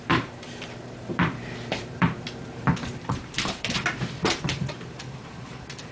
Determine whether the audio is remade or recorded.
remade